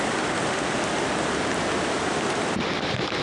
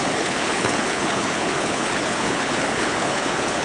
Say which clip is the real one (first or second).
first